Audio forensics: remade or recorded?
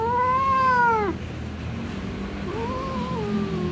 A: recorded